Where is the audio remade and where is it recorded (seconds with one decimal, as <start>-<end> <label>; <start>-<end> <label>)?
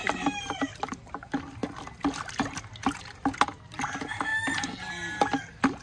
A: 0.0-5.8 recorded